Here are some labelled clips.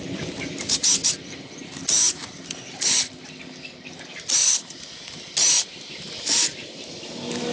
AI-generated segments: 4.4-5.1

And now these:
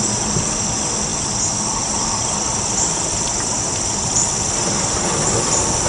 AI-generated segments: none

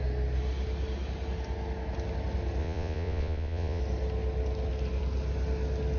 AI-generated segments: 2.6-3.8

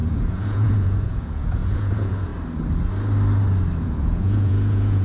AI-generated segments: 0.0-2.3; 3.8-5.0

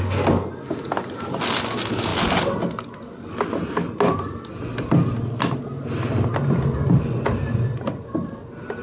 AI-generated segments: none

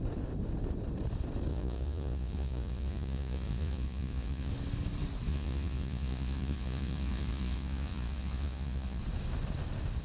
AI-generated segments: 1.5-4.5; 5.3-9.0